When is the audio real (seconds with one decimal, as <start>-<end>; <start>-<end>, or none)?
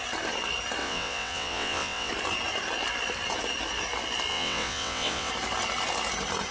0.0-0.8; 2.1-4.3; 5.3-6.5